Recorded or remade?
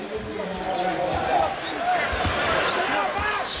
recorded